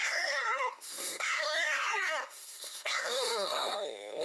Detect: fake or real fake